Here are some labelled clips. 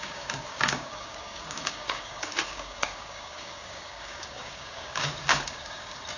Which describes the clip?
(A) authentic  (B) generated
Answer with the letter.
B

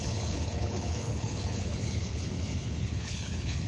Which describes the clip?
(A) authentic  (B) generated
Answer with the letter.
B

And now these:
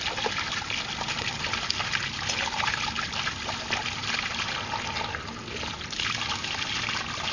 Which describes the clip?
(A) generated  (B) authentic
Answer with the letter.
B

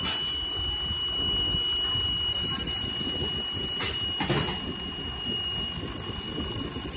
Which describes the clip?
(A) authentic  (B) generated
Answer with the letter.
A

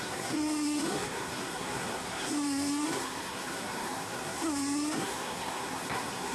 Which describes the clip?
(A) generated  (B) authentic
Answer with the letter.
A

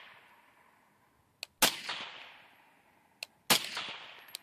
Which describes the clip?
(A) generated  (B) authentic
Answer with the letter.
B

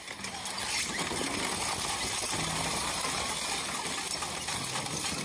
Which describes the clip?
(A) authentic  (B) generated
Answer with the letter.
A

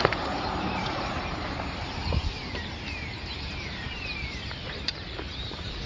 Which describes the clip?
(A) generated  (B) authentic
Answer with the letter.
A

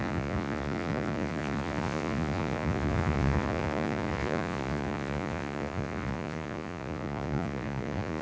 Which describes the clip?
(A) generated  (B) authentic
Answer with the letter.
A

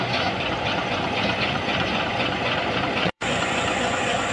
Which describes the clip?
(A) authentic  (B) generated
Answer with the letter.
B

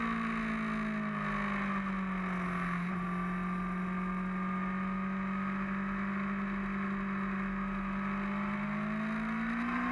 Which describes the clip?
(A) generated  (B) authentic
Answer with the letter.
B